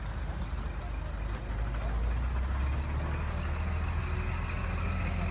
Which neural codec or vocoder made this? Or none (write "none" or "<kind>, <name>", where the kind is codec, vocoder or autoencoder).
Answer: none